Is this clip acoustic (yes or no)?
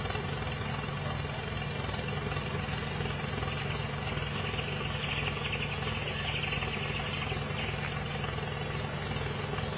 yes